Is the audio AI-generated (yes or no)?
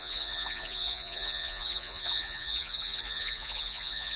yes